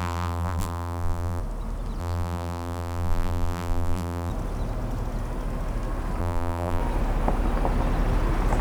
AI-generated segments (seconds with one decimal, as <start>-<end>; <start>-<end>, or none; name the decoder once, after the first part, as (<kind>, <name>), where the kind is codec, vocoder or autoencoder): 0.0-1.4 (vocoder, BigVGAN v2); 2.0-4.3; 6.2-6.8